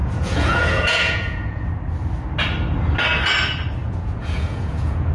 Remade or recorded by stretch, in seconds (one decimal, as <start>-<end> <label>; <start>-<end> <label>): 0.0-1.7 remade; 1.7-3.8 recorded; 3.8-5.1 remade

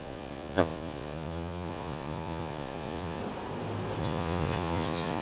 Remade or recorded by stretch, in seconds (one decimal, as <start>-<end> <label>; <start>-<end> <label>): 0.0-3.2 remade; 3.2-4.0 recorded; 4.0-5.2 remade